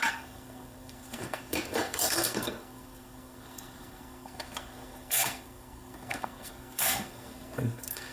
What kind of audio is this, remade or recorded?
remade